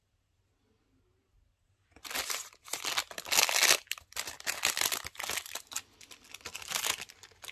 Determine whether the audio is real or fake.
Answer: real